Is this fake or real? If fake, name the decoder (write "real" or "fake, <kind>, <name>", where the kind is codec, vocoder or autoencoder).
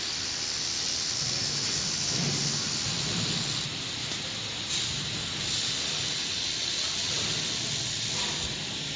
real